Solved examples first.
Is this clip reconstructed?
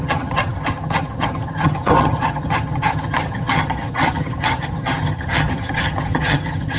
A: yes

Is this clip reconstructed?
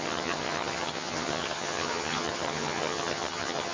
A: yes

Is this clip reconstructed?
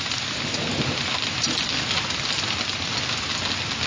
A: no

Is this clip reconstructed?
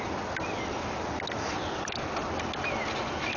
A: no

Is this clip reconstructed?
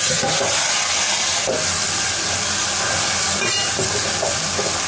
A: no